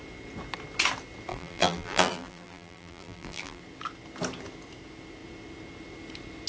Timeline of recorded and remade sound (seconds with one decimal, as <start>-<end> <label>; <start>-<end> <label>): 0.0-1.3 recorded; 1.3-3.6 remade; 3.6-6.5 recorded